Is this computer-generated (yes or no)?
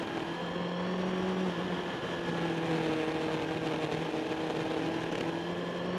no